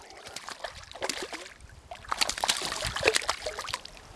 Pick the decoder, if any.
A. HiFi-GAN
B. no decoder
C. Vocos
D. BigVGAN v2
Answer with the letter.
D